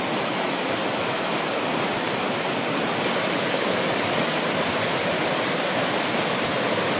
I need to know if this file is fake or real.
real